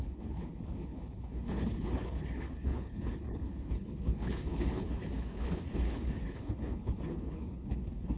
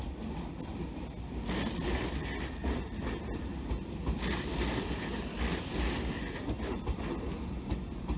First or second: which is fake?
first